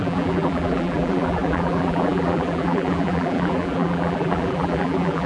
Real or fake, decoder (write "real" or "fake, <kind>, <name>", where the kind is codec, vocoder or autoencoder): fake, vocoder, BigVGAN v2